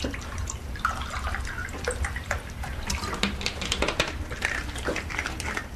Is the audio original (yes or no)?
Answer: yes